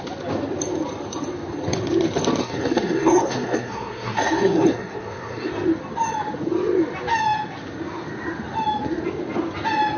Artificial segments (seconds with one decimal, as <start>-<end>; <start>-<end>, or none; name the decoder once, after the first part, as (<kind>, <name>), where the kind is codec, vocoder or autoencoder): 2.4-5.5 (codec, SNAC)